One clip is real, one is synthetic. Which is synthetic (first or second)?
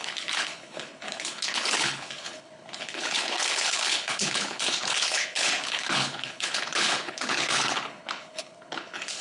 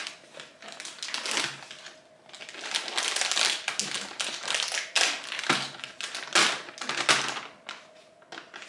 first